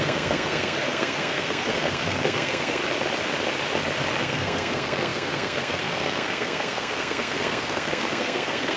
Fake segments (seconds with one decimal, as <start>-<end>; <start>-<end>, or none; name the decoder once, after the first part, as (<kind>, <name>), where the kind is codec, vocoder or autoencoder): 0.0-2.8 (codec, SNAC); 4.2-8.8